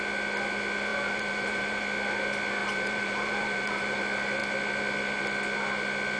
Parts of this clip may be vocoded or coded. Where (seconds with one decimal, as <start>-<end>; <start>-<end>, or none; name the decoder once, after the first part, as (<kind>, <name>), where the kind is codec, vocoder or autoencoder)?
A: 0.9-1.8 (vocoder, BigVGAN v2); 2.6-4.0